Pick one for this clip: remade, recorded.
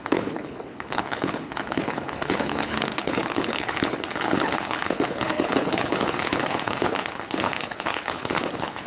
remade